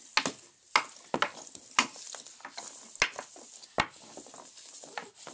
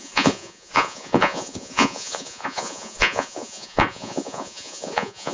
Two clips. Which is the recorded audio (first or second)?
first